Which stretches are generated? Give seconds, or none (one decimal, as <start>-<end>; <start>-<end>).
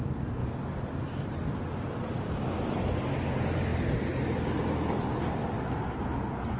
none